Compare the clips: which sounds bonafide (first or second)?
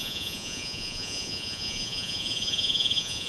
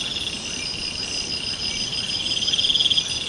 second